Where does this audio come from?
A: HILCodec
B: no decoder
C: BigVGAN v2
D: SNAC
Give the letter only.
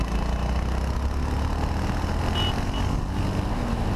B